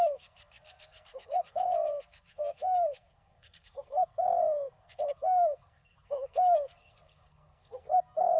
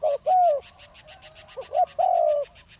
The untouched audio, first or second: second